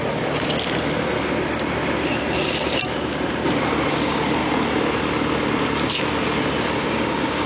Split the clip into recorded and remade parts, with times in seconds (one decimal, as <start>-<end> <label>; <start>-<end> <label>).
0.0-3.9 recorded; 3.9-4.4 remade; 4.4-6.9 recorded; 6.9-7.5 remade